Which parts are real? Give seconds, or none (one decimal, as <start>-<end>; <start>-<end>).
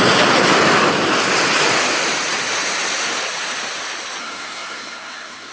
0.0-4.2